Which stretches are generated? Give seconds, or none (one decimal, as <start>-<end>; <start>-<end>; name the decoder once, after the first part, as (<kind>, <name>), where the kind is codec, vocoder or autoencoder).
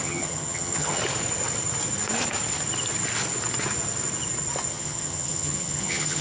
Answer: 0.0-1.0 (vocoder, HiFi-GAN); 4.7-6.2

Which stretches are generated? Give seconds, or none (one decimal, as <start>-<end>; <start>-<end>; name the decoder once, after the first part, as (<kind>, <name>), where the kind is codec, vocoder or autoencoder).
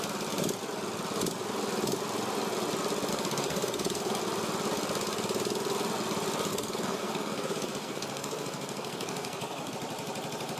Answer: 3.1-4.2 (codec, SNAC); 6.5-9.7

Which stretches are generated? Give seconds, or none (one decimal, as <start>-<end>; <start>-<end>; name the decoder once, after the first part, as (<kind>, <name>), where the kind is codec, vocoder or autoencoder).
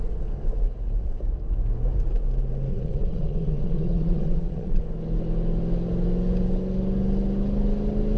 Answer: 2.7-4.8 (vocoder, Vocos)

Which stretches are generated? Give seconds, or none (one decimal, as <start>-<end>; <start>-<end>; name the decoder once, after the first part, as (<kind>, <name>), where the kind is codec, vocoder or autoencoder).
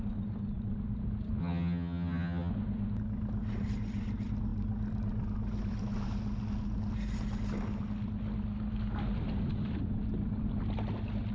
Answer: 1.4-2.5 (vocoder, HiFi-GAN)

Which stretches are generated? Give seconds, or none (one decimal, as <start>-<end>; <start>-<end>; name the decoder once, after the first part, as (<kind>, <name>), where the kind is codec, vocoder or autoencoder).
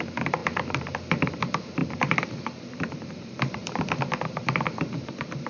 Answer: 0.0-3.6 (vocoder, BigVGAN v2); 4.2-5.5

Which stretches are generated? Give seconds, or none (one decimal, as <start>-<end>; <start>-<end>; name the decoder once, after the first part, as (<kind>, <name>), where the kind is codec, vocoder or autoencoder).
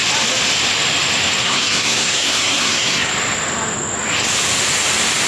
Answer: 1.4-3.1 (codec, SNAC)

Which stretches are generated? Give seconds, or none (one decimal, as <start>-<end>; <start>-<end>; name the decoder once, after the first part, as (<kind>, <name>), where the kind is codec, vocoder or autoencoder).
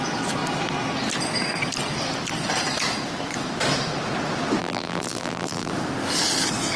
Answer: 4.6-5.7 (vocoder, BigVGAN v2)